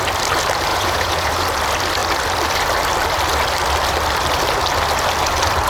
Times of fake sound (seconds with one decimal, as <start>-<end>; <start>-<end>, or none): 0.7-1.3

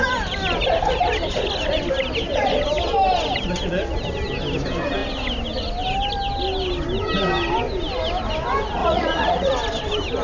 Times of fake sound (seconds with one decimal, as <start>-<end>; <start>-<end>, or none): 8.8-9.5

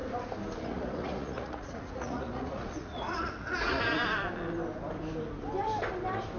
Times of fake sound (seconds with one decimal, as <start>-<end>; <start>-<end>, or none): 0.6-3.8

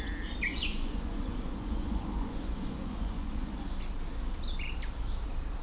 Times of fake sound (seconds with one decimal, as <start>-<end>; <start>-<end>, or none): 0.5-3.5